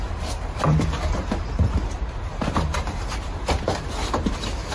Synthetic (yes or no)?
yes